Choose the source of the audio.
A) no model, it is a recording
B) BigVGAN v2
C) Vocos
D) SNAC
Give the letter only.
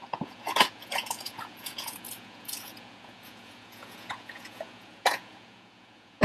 C